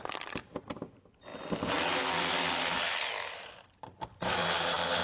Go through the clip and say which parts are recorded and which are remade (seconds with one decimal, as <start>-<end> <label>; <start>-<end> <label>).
0.0-5.0 recorded